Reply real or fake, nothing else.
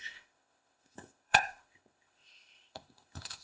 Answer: fake